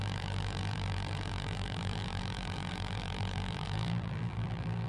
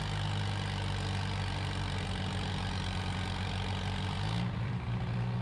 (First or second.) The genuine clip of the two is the second